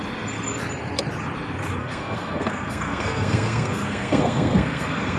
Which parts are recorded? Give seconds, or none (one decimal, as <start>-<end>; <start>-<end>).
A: 0.0-1.8